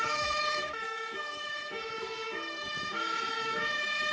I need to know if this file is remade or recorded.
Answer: remade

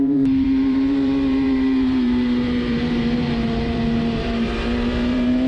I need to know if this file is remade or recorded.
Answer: remade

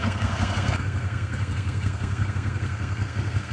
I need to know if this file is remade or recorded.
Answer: remade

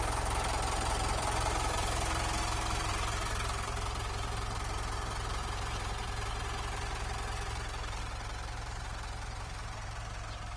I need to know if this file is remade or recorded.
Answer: remade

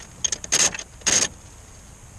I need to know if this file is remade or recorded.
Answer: recorded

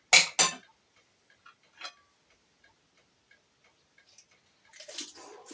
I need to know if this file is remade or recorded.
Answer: recorded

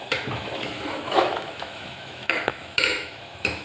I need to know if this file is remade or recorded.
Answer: remade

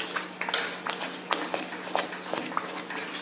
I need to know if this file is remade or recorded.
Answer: recorded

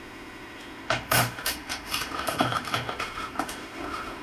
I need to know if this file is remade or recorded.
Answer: remade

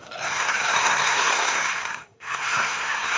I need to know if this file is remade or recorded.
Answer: remade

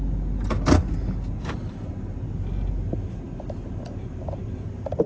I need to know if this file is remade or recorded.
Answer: recorded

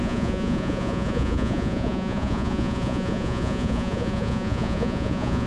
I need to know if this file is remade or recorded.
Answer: remade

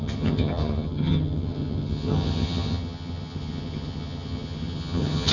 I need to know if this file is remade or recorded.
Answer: remade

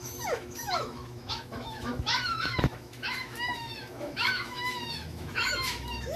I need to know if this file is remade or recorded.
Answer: remade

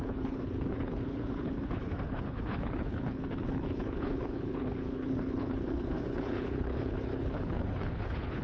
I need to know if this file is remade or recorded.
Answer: remade